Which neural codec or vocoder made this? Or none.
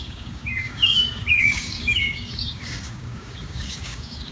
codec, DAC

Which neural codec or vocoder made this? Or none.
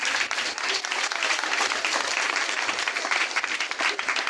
vocoder, BigVGAN v2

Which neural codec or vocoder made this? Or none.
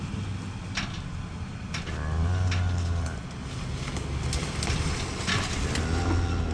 none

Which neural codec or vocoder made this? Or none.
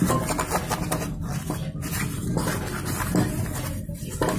none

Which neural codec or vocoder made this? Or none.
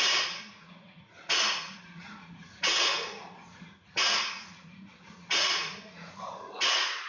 vocoder, Vocos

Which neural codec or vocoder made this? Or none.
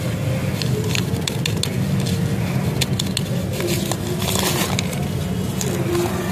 none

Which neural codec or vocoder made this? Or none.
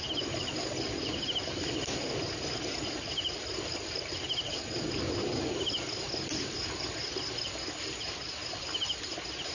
none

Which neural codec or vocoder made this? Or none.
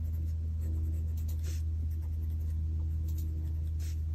none